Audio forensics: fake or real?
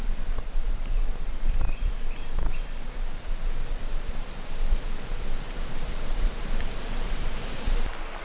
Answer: fake